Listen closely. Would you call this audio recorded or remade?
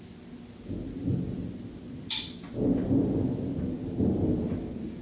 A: recorded